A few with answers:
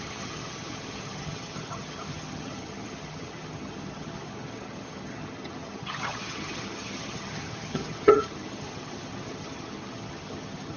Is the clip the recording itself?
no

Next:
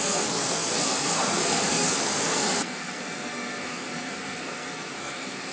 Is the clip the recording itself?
no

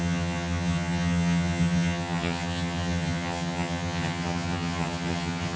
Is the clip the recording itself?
no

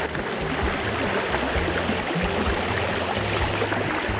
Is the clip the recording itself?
yes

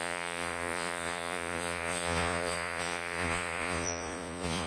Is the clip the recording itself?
no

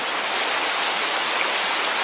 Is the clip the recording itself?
yes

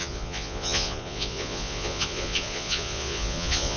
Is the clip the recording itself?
no